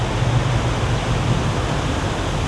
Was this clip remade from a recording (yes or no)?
no